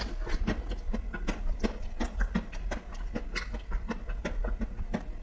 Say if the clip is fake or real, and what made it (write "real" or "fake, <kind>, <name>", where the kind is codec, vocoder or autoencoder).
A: real